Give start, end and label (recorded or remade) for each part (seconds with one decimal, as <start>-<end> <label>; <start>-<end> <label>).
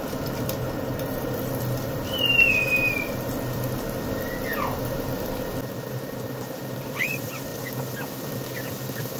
0.0-7.5 remade; 7.5-8.0 recorded; 8.0-9.2 remade